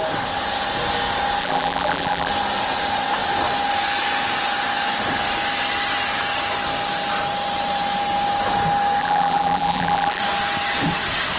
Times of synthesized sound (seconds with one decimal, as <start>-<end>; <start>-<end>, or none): 1.4-2.3; 9.0-10.2